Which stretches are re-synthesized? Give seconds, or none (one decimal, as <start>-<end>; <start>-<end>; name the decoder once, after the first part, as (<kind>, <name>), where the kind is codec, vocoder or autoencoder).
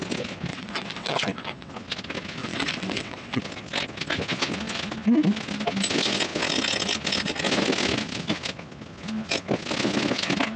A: 0.5-1.7 (vocoder, WaveNeXt); 2.4-3.4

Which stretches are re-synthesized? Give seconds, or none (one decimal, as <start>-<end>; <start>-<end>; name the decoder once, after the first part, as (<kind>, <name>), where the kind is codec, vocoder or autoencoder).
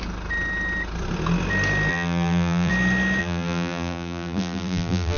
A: 1.9-2.7 (vocoder, BigVGAN v2); 3.2-5.2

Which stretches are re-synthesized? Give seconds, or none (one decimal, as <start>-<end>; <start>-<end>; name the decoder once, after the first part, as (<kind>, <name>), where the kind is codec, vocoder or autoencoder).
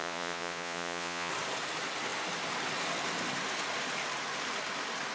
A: 0.0-1.3 (vocoder, Vocos)